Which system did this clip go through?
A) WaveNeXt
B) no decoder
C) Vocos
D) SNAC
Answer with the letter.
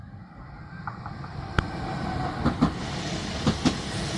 B